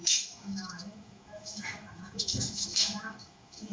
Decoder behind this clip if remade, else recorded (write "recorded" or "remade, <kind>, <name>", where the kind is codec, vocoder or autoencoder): remade, autoencoder, DAC-VAE